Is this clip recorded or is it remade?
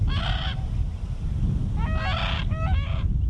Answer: recorded